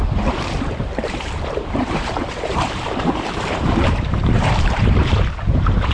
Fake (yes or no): yes